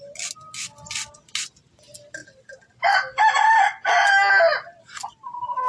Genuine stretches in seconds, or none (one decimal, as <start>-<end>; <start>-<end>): 0.0-5.7